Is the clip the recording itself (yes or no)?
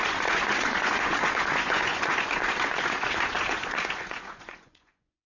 no